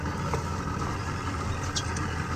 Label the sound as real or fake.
real